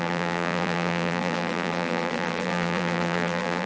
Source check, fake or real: fake